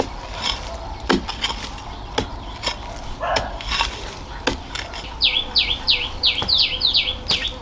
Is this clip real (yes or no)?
yes